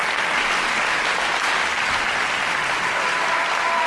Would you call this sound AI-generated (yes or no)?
no